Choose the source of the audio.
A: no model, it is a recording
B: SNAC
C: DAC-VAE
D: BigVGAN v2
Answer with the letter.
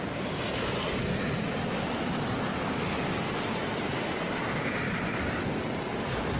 A